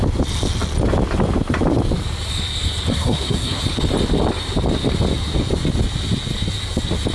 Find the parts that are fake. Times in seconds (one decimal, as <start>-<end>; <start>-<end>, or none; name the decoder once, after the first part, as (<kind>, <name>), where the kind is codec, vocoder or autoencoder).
2.9-3.6 (codec, SNAC)